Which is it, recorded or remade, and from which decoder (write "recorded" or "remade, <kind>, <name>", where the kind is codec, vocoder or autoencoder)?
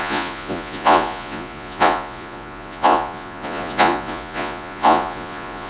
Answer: remade, vocoder, Vocos